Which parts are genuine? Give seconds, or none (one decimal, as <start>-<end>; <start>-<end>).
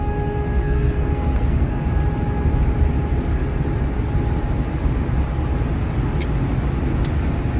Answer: 0.0-0.6; 1.7-7.6